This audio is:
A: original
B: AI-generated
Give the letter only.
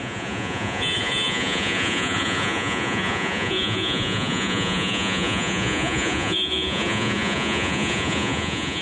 B